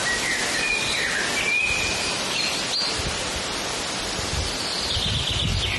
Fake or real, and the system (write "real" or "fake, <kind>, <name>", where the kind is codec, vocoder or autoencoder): real